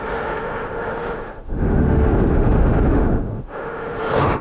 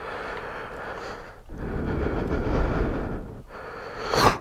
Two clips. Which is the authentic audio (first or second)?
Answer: second